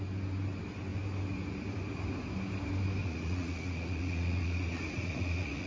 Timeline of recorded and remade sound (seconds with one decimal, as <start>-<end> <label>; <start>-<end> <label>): 0.0-3.0 recorded; 3.0-5.7 remade